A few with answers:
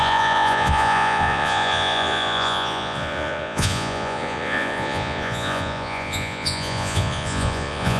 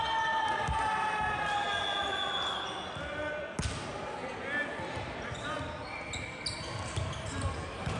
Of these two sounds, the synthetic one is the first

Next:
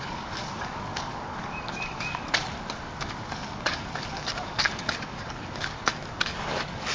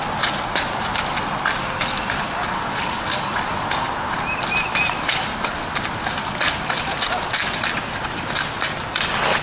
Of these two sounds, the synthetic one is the first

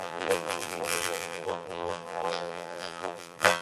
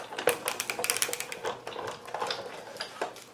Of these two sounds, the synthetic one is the first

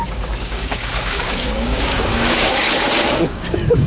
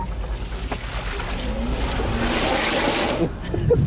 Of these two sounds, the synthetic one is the first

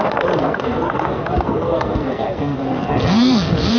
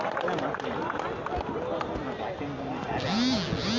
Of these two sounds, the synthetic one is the first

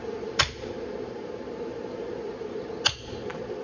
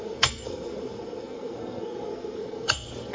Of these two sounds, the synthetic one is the second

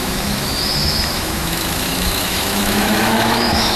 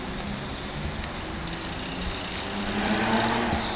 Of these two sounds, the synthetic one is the first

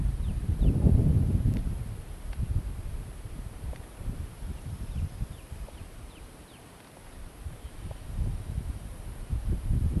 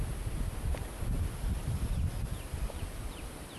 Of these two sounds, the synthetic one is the first